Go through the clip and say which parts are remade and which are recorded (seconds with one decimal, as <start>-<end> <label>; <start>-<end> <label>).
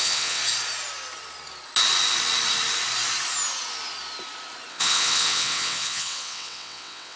0.0-0.4 remade; 0.4-4.7 recorded; 4.7-7.2 remade